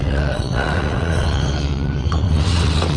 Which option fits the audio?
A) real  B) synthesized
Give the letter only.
B